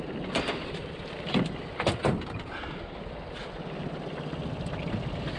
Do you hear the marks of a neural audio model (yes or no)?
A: no